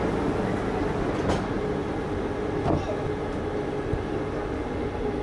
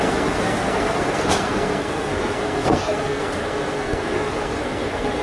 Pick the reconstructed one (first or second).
second